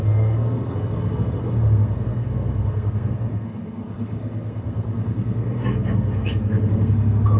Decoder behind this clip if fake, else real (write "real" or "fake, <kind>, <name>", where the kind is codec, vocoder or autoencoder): fake, codec, SNAC